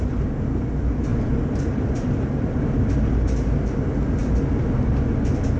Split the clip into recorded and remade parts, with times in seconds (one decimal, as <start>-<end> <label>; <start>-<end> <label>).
0.0-1.1 recorded; 1.1-2.9 remade; 2.9-5.6 recorded